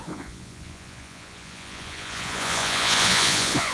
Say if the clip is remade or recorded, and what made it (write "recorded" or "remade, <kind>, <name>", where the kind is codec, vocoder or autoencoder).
remade, vocoder, Vocos